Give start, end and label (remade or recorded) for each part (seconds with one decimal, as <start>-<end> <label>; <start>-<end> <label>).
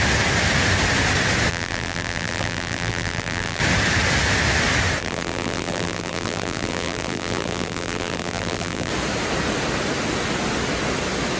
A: 0.0-1.5 recorded; 1.5-3.6 remade; 3.6-5.0 recorded; 5.0-8.9 remade; 8.9-11.4 recorded